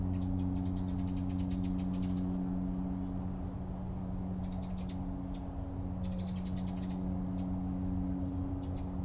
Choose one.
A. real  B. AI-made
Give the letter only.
A